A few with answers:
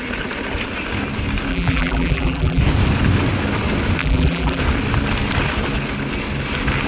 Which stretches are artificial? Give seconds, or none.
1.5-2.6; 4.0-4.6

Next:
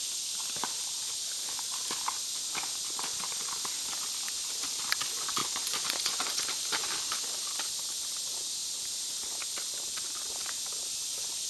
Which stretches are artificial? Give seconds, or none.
5.4-6.4

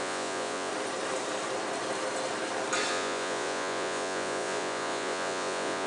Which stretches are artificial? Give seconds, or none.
0.0-0.7; 2.9-5.9

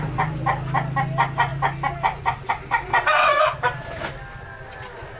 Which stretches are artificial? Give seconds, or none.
2.9-3.4

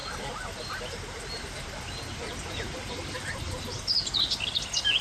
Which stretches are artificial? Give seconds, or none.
none